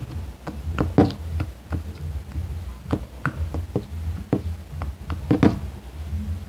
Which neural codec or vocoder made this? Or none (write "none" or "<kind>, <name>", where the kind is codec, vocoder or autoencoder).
none